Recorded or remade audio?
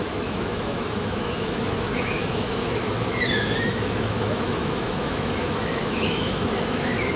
remade